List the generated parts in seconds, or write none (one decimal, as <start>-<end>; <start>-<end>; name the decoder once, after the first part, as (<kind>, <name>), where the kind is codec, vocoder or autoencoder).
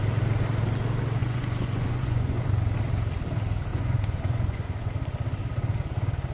1.2-2.4 (vocoder, Vocos); 3.7-4.9